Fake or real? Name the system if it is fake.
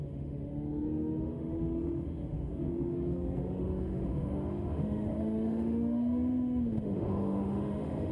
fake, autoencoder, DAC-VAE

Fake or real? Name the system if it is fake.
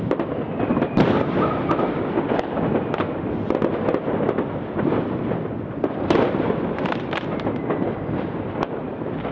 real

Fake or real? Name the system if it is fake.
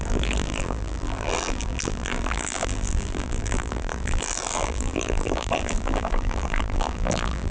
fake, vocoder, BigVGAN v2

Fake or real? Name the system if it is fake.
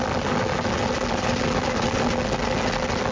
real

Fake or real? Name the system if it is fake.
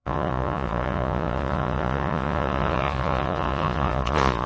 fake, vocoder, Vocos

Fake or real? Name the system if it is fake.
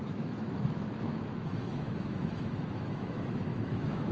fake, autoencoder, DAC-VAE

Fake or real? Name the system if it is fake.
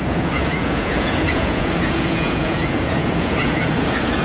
fake, vocoder, Vocos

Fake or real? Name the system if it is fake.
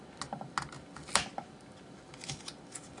real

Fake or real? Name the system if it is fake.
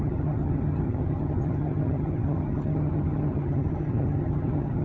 fake, vocoder, HiFi-GAN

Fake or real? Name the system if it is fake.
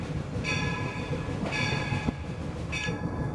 real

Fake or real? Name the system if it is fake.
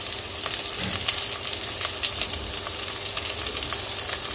real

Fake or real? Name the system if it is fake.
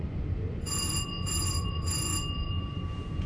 fake, vocoder, Vocos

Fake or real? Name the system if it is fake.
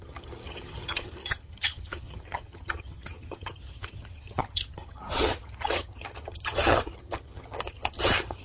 fake, vocoder, HiFi-GAN